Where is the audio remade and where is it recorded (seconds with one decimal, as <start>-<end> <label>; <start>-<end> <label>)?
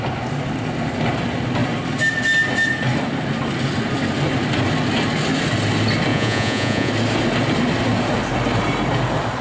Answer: 0.0-6.1 recorded; 6.1-6.9 remade; 6.9-9.4 recorded